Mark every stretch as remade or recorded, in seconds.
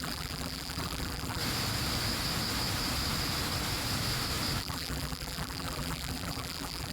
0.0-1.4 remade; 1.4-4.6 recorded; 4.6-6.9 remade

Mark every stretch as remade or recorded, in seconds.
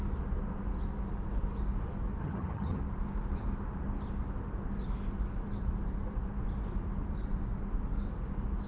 0.0-2.2 recorded; 2.2-2.8 remade; 2.8-8.7 recorded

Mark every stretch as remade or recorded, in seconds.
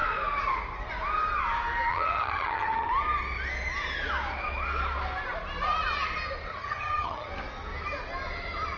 0.0-1.9 recorded; 1.9-2.9 remade; 2.9-6.5 recorded; 6.5-7.3 remade; 7.3-8.8 recorded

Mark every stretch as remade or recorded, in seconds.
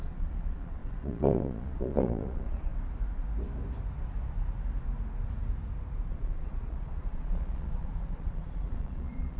0.0-2.7 remade; 2.7-6.1 recorded; 6.1-9.4 remade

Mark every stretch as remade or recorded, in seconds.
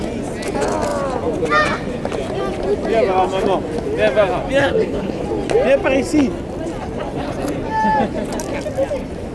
0.0-4.6 recorded; 4.6-5.2 remade; 5.2-9.3 recorded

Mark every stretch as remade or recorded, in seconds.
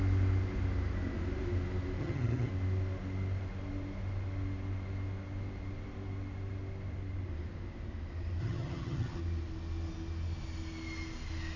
0.0-2.0 recorded; 2.0-2.5 remade; 2.5-8.4 recorded; 8.4-9.2 remade; 9.2-11.6 recorded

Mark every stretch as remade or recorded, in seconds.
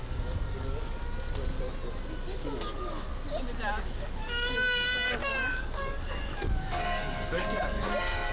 0.0-1.0 remade; 1.0-2.2 recorded; 2.2-3.1 remade; 3.1-3.8 recorded; 3.8-8.3 remade